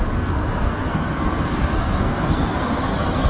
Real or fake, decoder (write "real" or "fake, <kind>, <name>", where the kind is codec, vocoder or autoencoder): fake, codec, SNAC